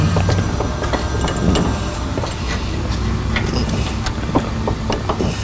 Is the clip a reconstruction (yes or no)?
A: no